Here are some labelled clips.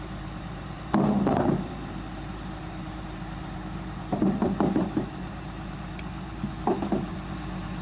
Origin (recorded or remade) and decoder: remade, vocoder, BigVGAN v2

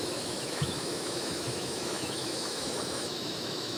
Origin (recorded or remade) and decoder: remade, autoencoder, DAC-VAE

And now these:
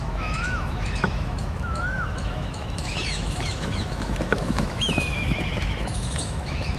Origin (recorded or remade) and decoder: remade, autoencoder, DAC-VAE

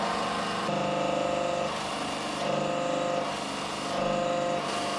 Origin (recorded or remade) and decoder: recorded